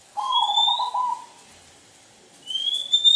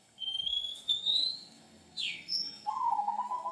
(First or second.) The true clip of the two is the first